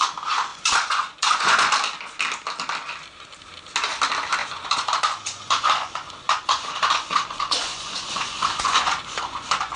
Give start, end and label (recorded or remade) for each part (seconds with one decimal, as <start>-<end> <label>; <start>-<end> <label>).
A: 0.0-0.5 recorded; 0.5-1.7 remade; 1.7-4.4 recorded; 4.4-9.8 remade